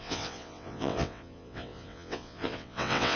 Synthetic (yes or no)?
yes